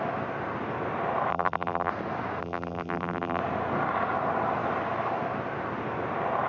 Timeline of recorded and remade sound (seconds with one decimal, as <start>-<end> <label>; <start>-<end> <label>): 0.0-1.3 recorded; 1.3-1.9 remade; 1.9-2.4 recorded; 2.4-3.4 remade; 3.4-6.5 recorded